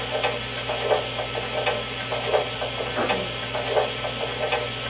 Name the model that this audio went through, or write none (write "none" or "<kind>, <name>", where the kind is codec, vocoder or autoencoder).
none